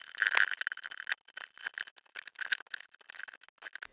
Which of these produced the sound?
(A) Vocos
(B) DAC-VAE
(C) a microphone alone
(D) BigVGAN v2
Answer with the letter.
C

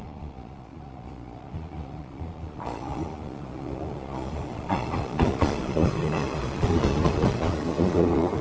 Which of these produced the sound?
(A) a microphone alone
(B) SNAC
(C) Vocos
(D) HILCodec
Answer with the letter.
C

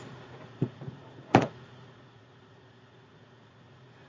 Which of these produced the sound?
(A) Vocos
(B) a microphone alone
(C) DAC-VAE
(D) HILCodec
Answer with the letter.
A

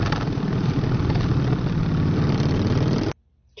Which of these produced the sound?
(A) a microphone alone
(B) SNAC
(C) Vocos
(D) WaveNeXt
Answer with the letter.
A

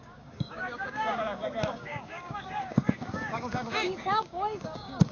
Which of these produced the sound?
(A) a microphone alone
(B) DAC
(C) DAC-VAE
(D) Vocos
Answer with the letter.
B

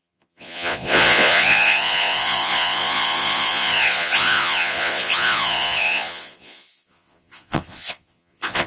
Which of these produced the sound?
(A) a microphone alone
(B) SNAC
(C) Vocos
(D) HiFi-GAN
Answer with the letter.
C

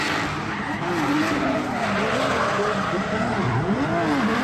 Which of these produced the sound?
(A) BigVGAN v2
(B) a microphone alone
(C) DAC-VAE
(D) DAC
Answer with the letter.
B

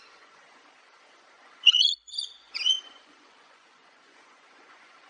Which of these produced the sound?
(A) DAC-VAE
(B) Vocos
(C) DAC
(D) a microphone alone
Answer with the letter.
B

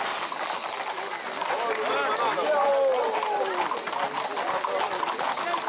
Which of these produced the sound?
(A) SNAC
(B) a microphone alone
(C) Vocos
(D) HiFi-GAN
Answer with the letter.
B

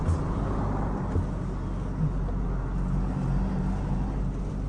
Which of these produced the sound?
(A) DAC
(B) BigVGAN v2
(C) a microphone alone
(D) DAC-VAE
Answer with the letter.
C